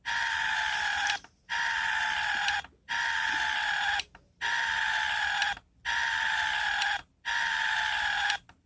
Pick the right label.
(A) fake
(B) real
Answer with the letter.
B